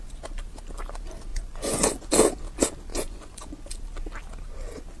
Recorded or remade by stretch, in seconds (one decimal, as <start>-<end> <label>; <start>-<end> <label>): 0.0-1.3 recorded; 1.3-2.1 remade; 2.1-2.9 recorded; 2.9-3.6 remade; 3.6-5.0 recorded